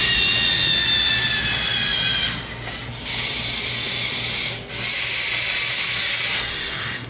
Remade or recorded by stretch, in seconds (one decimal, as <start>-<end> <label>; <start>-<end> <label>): 0.0-6.5 recorded; 6.5-7.1 remade